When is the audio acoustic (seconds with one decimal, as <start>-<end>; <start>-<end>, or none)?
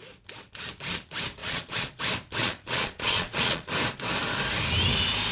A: 0.0-1.4; 2.0-2.4; 3.7-5.3